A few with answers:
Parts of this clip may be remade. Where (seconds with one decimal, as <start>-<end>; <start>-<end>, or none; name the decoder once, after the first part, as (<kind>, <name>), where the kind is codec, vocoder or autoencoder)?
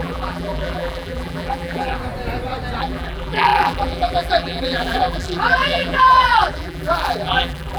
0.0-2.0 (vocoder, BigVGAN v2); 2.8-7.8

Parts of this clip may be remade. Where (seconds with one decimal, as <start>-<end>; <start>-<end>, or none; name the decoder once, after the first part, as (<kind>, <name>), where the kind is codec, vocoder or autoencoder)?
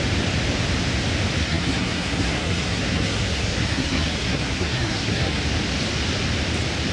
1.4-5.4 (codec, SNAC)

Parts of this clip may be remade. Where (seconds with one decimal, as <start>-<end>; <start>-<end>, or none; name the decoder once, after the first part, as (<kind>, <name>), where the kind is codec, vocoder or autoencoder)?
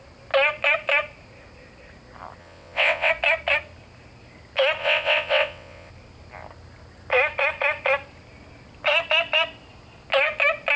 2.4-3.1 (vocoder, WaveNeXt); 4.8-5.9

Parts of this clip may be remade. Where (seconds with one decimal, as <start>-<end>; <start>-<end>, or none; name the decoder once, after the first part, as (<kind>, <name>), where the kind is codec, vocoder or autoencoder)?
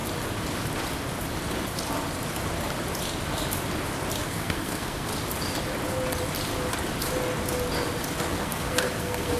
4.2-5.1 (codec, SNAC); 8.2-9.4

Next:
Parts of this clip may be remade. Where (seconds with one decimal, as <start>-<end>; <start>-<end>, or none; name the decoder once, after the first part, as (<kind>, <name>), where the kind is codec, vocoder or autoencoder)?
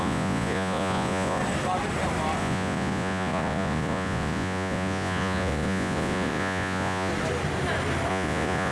0.0-1.4 (vocoder, Vocos); 2.4-7.1; 8.1-8.7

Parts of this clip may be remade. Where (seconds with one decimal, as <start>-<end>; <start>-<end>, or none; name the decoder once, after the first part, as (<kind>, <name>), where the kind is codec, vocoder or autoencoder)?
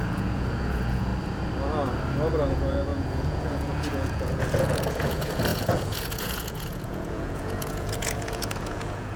0.0-1.1 (vocoder, Vocos); 2.5-9.2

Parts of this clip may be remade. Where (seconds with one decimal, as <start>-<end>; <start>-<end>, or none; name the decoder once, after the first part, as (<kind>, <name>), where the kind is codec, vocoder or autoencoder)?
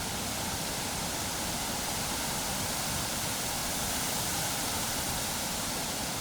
0.0-6.2 (vocoder, BigVGAN v2)